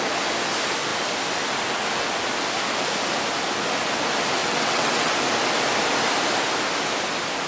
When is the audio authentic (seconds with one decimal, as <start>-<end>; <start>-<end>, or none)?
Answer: 0.0-4.4; 5.1-7.5

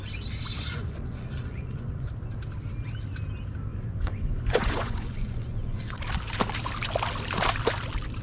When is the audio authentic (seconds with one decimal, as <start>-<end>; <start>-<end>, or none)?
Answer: 0.0-0.7; 2.1-3.7; 6.0-8.2

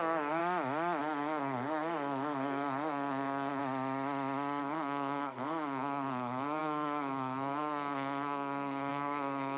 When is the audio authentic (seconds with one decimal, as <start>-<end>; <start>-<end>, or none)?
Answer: 0.4-1.0; 3.6-4.6